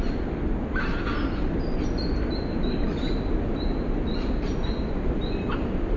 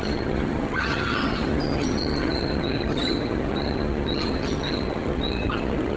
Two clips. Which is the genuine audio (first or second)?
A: first